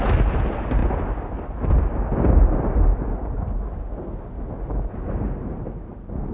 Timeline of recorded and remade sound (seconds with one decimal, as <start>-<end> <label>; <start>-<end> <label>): 0.0-6.3 recorded